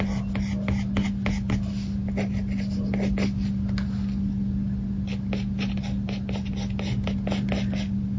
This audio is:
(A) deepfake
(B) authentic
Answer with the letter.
B